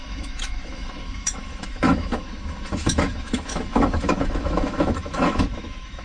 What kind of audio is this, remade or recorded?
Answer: remade